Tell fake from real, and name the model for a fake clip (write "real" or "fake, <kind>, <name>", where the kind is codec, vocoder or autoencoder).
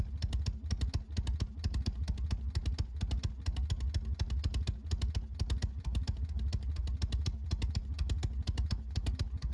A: real